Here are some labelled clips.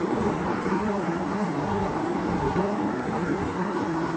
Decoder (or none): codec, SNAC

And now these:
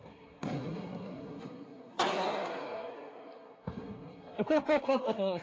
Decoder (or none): codec, SNAC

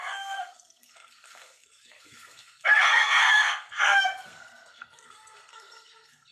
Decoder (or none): codec, SNAC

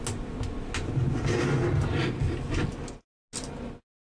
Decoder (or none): none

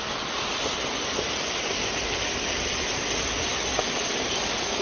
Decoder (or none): none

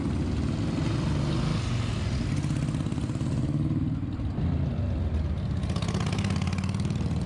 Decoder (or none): none